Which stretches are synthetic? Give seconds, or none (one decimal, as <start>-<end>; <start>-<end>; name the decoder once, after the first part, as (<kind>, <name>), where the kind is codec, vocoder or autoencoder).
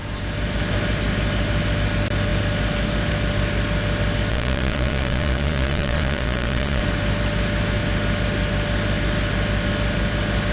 4.3-6.8 (vocoder, Vocos)